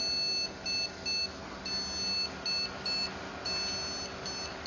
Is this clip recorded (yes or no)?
yes